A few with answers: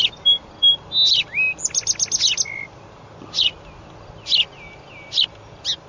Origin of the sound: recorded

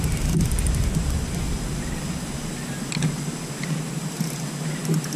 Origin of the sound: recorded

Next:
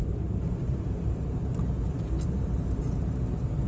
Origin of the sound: remade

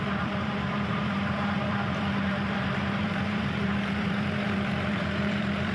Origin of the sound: remade